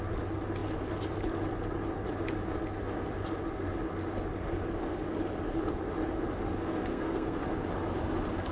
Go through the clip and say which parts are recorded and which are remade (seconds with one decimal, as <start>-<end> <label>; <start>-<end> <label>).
0.0-6.9 recorded; 6.9-7.4 remade; 7.4-8.5 recorded